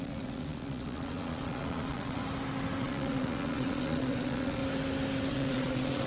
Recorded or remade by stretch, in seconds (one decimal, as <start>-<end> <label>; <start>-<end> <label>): 0.0-2.2 remade; 2.2-2.8 recorded; 2.8-4.6 remade; 4.6-5.3 recorded; 5.3-6.1 remade